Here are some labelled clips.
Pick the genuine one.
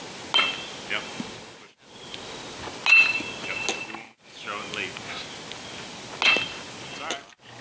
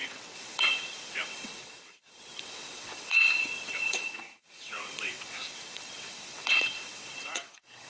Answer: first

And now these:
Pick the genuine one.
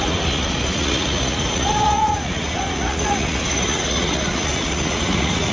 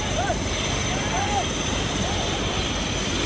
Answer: second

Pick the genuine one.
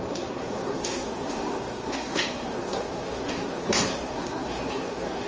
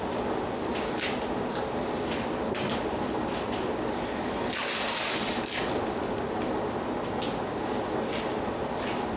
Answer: second